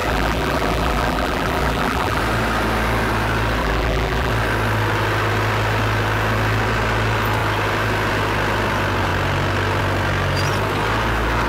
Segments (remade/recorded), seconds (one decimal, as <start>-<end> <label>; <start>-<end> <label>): 0.0-2.2 remade; 2.2-3.6 recorded; 3.6-4.3 remade; 4.3-11.5 recorded